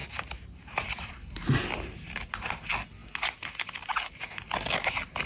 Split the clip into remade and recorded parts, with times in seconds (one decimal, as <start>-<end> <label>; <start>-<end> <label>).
0.0-1.1 remade; 1.1-5.3 recorded